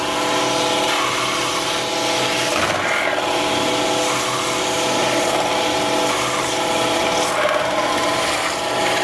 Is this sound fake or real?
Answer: real